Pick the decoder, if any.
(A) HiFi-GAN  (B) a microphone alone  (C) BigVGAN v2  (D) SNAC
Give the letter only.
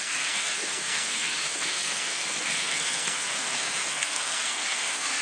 D